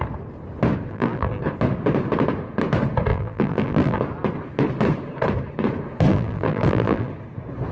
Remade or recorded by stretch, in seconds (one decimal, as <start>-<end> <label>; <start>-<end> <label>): 0.0-0.9 recorded; 0.9-1.4 remade; 1.4-3.1 recorded; 3.1-4.0 remade; 4.0-6.1 recorded; 6.1-7.1 remade; 7.1-7.7 recorded